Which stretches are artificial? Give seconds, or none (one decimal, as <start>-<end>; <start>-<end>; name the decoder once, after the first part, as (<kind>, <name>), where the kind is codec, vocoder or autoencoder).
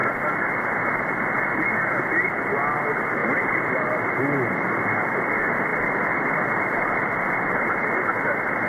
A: 3.2-4.1 (vocoder, BigVGAN v2); 5.7-8.1